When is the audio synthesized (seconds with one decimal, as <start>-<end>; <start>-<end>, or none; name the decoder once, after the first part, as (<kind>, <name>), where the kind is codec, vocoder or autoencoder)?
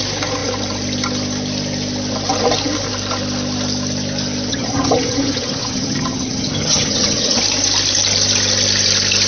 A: 4.5-7.4 (vocoder, HiFi-GAN)